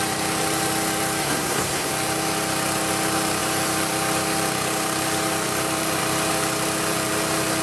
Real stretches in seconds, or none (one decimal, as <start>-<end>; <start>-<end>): 0.0-1.2; 1.9-7.6